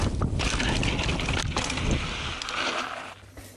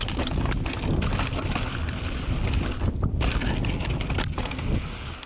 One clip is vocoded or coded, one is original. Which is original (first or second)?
second